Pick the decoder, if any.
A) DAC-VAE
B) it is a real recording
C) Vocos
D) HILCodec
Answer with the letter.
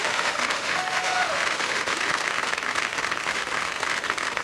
A